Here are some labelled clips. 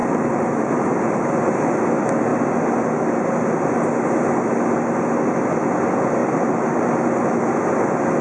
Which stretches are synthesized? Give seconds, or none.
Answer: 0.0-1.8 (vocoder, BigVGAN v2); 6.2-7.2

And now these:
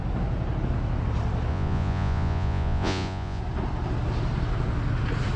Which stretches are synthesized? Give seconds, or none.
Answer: 1.5-3.4 (vocoder, Vocos)

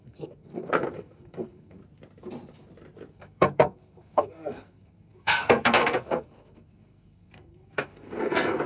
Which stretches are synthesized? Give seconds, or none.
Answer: 0.0-1.8 (codec, SNAC); 3.1-8.7

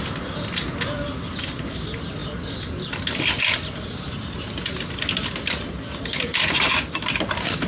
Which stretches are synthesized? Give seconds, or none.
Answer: none

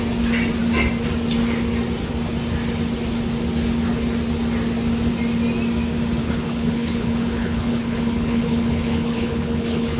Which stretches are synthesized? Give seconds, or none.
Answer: 6.2-10.0 (codec, HILCodec)

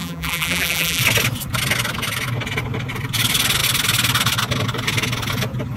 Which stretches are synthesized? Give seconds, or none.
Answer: 0.0-1.0 (vocoder, BigVGAN v2)

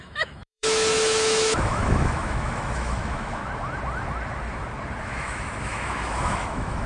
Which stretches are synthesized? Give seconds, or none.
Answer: 0.0-3.4 (autoencoder, DAC-VAE); 5.0-6.9